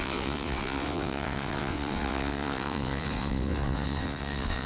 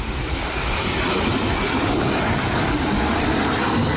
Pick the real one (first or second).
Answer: second